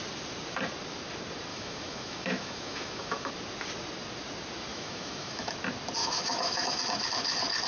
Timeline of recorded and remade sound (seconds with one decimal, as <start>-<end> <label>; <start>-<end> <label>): 0.0-1.5 recorded; 1.5-3.3 remade; 3.3-4.7 recorded; 4.7-5.5 remade; 5.5-6.0 recorded; 6.0-6.8 remade; 6.8-7.7 recorded